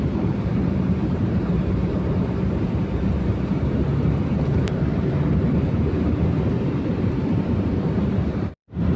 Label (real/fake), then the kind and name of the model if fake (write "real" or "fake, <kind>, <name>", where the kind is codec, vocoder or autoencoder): fake, vocoder, BigVGAN v2